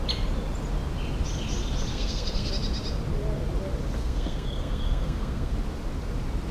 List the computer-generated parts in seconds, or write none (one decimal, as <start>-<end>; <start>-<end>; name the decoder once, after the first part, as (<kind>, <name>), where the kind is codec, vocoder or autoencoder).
1.9-2.5 (codec, SNAC); 4.0-5.5